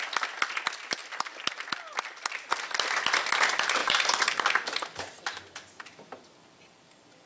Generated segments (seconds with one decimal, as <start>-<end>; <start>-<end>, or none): 3.8-4.4